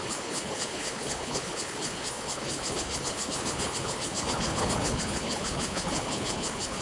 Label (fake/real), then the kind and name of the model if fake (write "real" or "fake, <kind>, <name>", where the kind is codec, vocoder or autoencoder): fake, codec, HILCodec